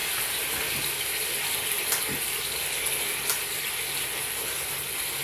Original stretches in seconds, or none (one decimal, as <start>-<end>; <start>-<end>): 0.0-5.2